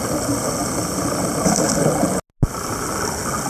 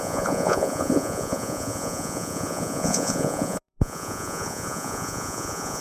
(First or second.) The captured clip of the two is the first